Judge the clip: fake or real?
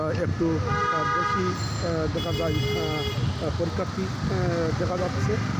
real